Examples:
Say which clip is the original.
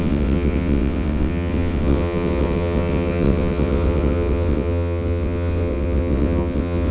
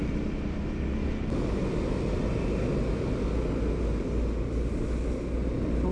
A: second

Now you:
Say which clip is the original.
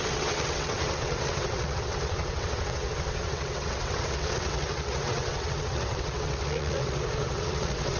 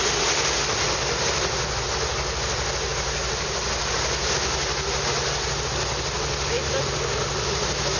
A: second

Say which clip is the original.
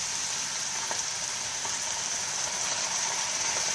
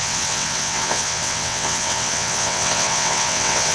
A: first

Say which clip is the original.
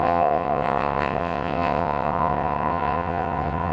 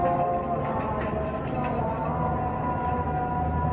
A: second